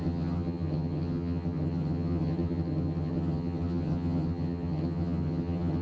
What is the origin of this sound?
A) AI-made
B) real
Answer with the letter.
A